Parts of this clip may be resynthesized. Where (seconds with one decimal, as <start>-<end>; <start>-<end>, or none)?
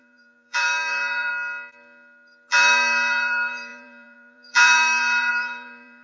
0.0-1.3; 2.5-6.0